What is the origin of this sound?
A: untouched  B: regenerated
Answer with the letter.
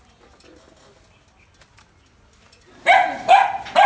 A